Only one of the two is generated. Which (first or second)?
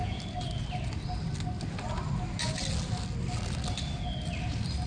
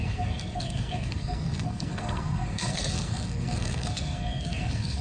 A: second